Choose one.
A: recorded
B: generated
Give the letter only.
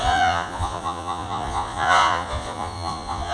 B